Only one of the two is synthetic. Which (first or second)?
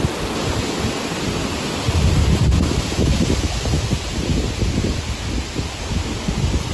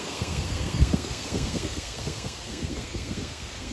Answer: second